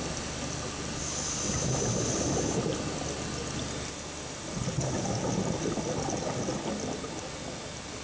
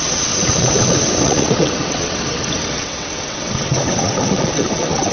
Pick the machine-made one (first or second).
second